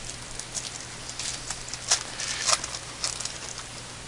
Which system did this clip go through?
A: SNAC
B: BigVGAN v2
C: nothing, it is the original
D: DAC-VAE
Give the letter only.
C